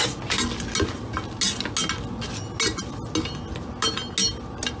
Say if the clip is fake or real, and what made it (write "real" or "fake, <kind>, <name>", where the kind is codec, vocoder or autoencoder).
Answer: real